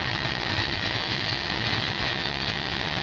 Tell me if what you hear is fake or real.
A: fake